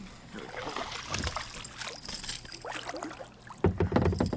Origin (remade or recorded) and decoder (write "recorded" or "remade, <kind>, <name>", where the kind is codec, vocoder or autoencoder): recorded